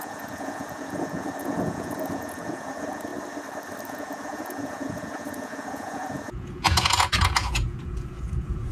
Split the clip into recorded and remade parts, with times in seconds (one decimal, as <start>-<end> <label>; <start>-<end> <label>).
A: 0.0-3.1 remade; 3.1-3.9 recorded; 3.9-8.7 remade